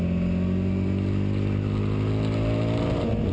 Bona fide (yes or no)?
yes